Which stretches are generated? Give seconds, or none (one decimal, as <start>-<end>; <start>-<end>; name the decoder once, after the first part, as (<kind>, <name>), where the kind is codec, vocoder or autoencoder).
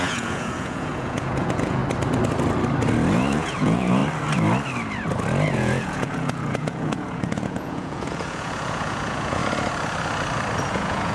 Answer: 0.0-1.8 (vocoder, Vocos); 3.3-4.0; 5.5-9.4; 10.7-11.1